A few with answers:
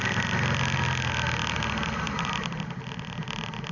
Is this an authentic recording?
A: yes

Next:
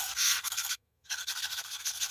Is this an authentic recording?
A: no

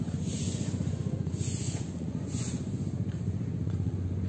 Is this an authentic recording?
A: no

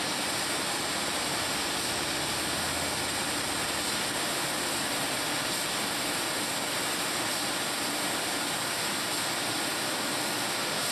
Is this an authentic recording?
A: yes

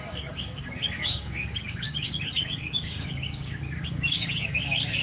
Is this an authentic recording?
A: no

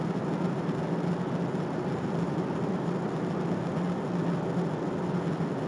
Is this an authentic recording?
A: yes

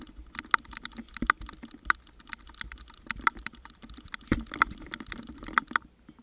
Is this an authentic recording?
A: yes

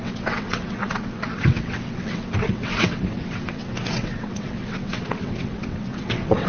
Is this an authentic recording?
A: no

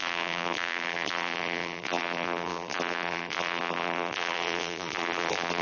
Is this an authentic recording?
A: no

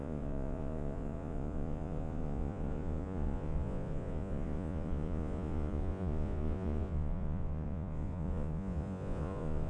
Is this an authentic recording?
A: no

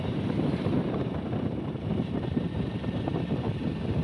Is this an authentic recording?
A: no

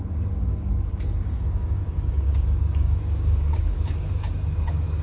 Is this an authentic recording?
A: no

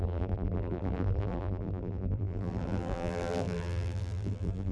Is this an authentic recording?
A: no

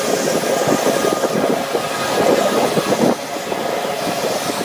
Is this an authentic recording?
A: yes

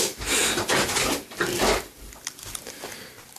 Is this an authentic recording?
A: yes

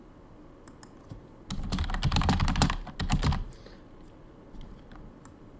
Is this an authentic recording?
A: yes